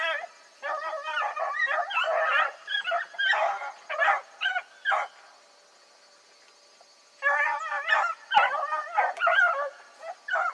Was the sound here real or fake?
real